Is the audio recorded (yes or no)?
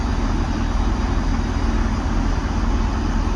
yes